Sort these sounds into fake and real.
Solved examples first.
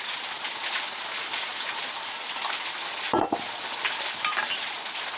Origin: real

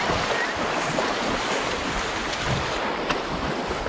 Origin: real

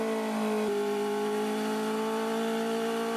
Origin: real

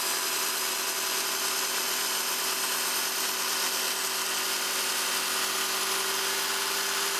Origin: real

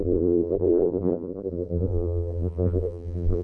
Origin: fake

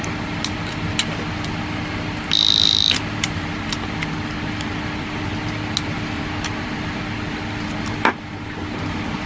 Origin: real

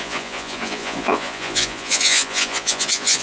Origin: fake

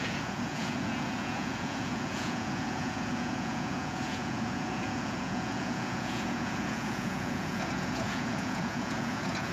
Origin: fake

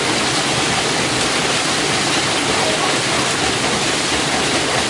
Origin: real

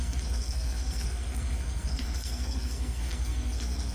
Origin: fake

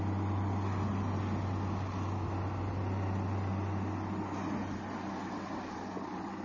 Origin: real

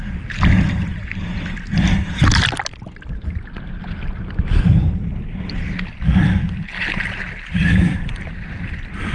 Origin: real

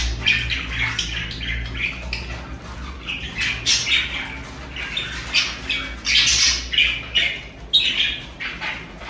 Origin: real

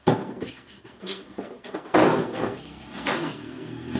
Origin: fake